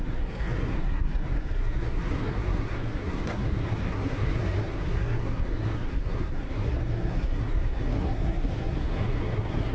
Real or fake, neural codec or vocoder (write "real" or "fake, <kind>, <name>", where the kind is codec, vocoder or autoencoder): fake, codec, SNAC